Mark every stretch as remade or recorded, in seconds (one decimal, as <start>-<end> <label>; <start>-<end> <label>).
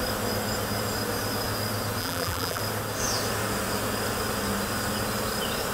0.0-2.0 recorded; 2.0-2.6 remade; 2.6-5.7 recorded